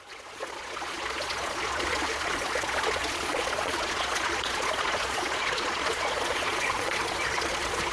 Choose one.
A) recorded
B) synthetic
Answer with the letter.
B